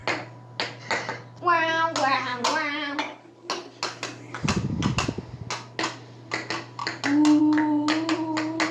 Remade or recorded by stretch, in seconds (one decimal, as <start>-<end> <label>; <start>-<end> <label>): 0.0-8.7 recorded